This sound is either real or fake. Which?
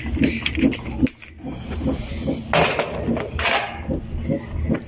real